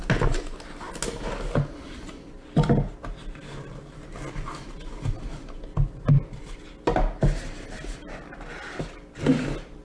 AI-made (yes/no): no